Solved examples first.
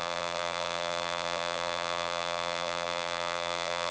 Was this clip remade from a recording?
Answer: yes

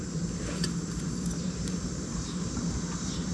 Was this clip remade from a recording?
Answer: yes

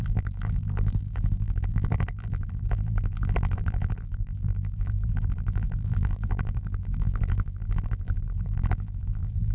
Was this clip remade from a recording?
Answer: yes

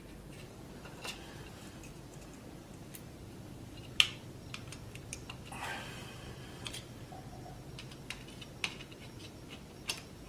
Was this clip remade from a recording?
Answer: yes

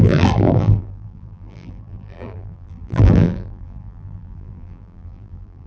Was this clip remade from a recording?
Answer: yes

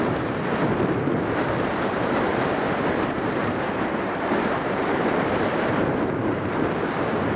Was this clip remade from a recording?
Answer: yes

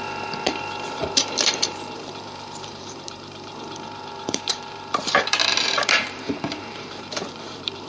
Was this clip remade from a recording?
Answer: yes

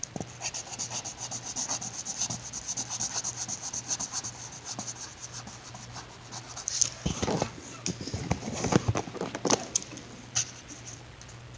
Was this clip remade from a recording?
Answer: no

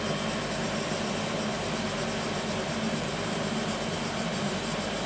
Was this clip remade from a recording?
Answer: yes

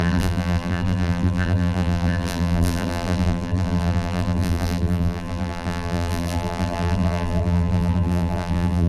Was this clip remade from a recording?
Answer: yes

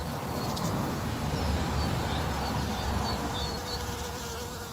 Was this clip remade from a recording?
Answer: yes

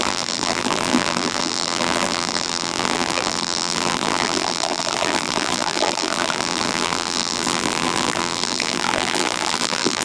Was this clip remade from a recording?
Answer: yes